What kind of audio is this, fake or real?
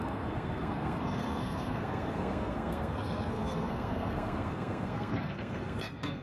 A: fake